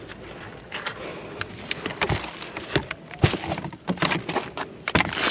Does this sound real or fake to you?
fake